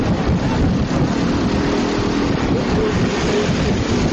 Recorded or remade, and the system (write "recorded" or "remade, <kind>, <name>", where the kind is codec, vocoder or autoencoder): recorded